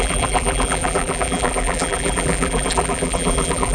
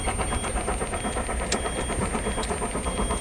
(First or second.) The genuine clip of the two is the second